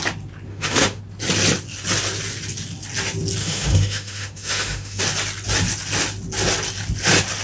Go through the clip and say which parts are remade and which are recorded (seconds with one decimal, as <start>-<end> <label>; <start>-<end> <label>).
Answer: 0.0-0.5 recorded; 0.5-1.0 remade; 1.0-3.4 recorded; 3.4-5.0 remade; 5.0-7.4 recorded